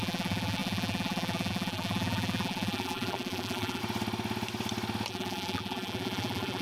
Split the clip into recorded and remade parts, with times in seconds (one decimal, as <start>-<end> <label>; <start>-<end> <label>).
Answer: 0.0-3.8 remade; 3.8-5.1 recorded; 5.1-6.6 remade